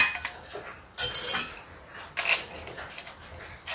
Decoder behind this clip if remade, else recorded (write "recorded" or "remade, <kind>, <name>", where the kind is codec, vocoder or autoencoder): recorded